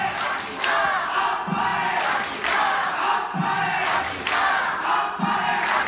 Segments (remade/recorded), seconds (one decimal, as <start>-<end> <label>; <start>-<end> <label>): 0.0-5.9 recorded